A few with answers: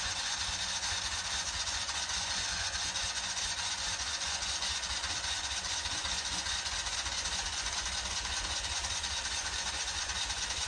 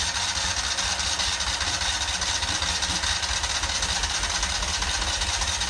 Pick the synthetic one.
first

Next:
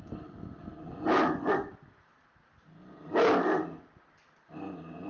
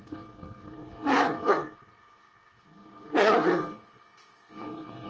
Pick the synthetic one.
second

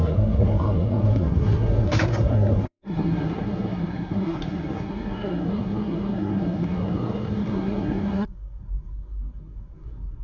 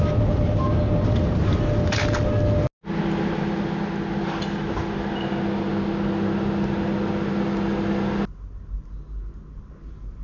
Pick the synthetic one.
first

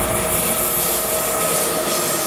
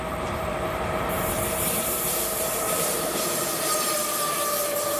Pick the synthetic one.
second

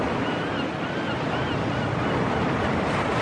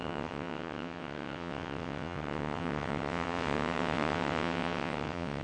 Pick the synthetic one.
second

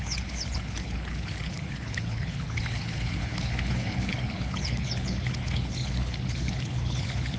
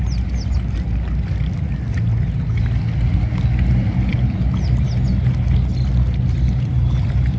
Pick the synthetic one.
first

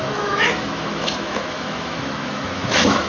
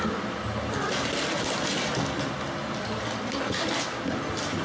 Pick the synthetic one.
first